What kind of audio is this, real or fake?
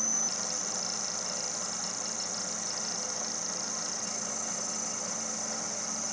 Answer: real